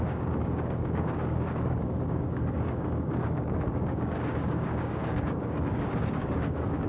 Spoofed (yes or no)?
yes